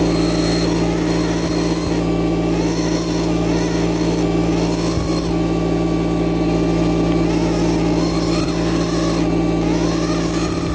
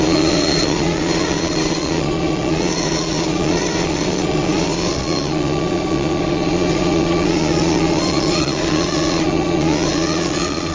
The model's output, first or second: second